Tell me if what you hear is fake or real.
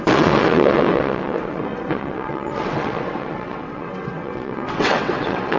fake